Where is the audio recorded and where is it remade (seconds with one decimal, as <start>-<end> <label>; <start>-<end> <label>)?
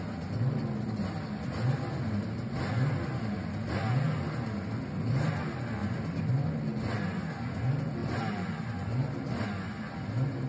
0.0-10.5 recorded